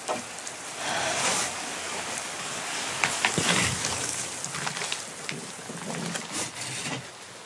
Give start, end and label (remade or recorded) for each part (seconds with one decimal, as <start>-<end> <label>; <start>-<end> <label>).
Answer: 0.0-1.3 recorded; 1.3-4.3 remade; 4.3-7.5 recorded